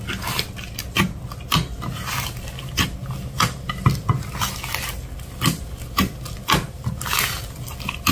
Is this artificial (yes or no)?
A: no